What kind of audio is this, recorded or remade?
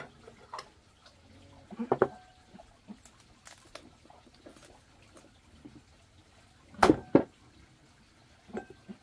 recorded